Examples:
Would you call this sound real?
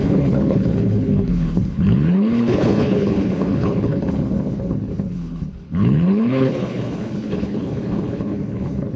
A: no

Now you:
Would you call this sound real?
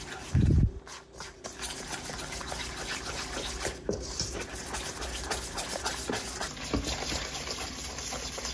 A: yes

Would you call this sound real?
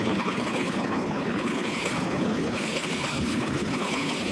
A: no